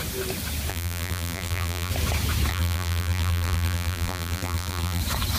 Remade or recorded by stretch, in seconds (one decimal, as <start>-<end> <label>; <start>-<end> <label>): 0.0-0.7 recorded; 0.7-1.9 remade; 1.9-2.5 recorded; 2.5-5.0 remade; 5.0-5.4 recorded